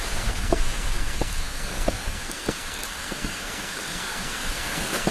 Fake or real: fake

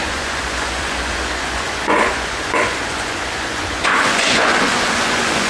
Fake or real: fake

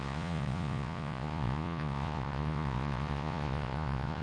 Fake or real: fake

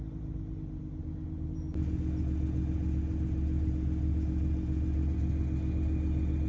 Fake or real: real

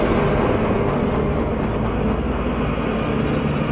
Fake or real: real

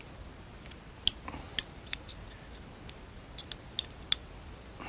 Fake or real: real